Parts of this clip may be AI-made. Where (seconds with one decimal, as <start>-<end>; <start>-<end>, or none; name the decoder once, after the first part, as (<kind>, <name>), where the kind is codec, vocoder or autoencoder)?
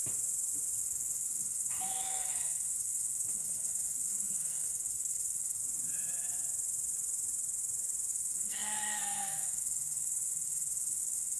0.8-5.6 (codec, SNAC); 8.1-11.4